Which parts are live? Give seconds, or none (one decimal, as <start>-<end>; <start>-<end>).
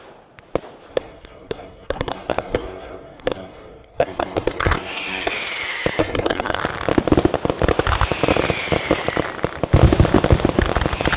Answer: 0.0-0.9; 5.3-6.0; 6.6-11.2